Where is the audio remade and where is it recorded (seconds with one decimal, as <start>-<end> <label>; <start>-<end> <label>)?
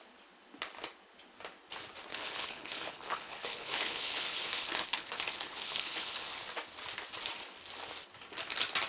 0.0-2.1 recorded; 2.1-6.4 remade; 6.4-8.9 recorded